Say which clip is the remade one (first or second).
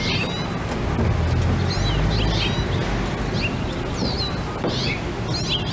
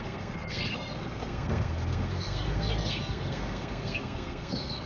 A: second